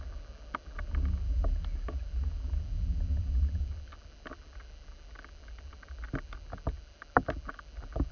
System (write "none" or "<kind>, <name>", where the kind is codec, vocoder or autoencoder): none